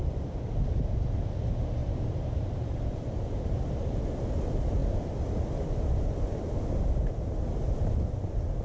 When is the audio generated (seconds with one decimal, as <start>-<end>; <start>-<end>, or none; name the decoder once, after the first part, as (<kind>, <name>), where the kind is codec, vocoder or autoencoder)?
1.8-4.0 (vocoder, BigVGAN v2)